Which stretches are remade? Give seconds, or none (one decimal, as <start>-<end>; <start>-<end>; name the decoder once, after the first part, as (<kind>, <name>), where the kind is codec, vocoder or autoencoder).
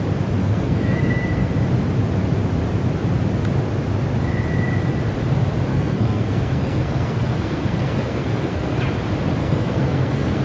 0.4-1.5 (codec, SNAC); 5.7-8.8; 9.4-10.4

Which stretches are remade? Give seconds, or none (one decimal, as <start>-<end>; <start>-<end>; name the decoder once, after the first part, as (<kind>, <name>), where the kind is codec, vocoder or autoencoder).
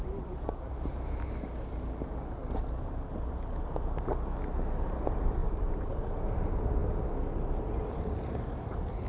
5.4-6.1 (vocoder, BigVGAN v2)